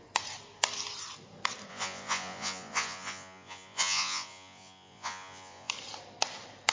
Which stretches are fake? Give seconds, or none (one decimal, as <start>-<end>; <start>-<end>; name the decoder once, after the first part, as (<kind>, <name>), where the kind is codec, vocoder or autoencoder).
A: 1.7-5.7 (vocoder, Vocos)